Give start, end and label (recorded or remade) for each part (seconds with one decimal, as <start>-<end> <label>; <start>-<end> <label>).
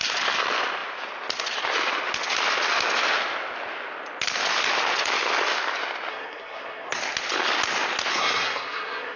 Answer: 0.0-6.1 recorded; 6.1-7.0 remade; 7.0-8.1 recorded; 8.1-9.2 remade